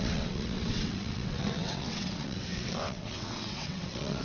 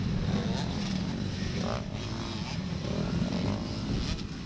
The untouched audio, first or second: second